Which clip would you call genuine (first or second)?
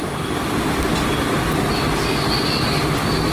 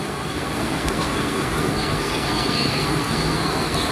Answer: first